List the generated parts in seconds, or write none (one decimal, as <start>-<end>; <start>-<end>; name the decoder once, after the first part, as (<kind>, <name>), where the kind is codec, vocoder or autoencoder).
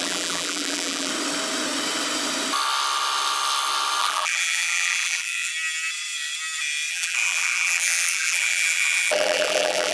0.0-1.1 (vocoder, BigVGAN v2); 4.0-5.5; 6.9-9.9